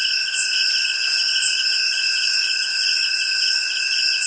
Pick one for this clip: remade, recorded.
recorded